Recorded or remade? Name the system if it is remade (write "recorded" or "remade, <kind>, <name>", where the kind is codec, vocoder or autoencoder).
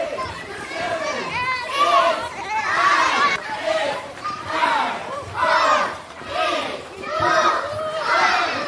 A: remade, vocoder, BigVGAN v2